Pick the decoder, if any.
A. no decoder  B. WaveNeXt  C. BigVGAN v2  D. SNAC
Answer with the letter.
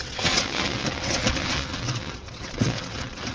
B